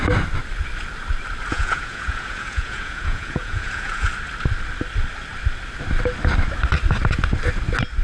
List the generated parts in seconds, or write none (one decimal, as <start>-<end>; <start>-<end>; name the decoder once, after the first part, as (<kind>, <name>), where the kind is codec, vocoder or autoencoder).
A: 1.5-4.1 (vocoder, Vocos)